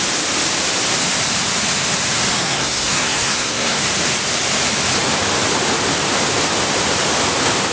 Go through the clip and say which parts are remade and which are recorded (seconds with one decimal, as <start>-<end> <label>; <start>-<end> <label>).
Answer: 0.0-2.3 recorded; 2.3-3.8 remade; 3.8-7.7 recorded